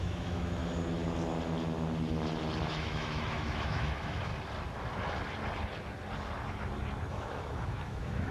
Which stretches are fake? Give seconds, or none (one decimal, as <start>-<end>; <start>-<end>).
0.0-0.6; 2.6-4.3; 7.1-8.3